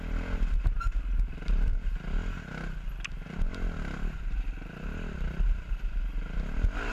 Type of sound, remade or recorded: recorded